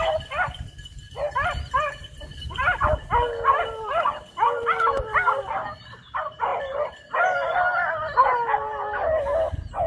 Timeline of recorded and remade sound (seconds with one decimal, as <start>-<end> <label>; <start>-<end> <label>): 0.0-2.0 recorded; 2.0-2.6 remade; 2.6-9.9 recorded